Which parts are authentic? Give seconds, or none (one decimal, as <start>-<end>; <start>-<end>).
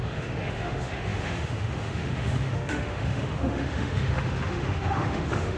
none